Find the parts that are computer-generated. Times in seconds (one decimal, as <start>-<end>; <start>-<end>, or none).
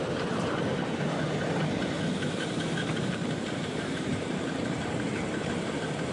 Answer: 0.0-0.7; 3.0-6.1